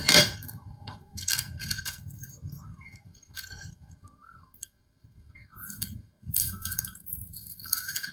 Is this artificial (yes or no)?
yes